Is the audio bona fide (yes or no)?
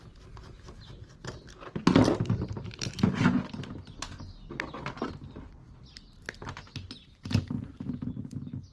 yes